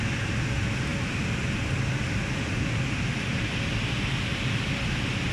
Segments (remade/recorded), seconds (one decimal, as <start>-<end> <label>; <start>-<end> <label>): 0.0-5.3 recorded